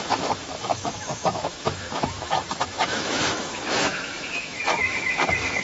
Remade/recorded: remade